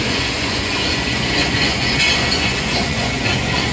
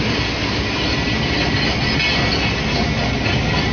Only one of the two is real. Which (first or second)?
second